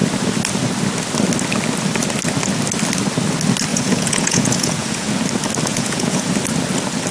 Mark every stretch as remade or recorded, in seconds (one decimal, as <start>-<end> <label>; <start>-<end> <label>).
0.0-3.7 recorded; 3.7-5.1 remade; 5.1-5.7 recorded; 5.7-6.3 remade; 6.3-7.1 recorded